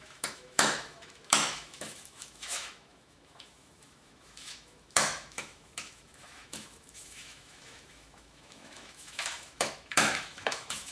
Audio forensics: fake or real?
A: fake